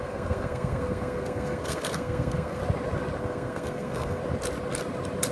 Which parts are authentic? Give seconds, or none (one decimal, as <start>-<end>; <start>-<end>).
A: 2.6-3.2; 4.2-5.3